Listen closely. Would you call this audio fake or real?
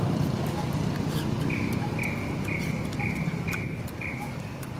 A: real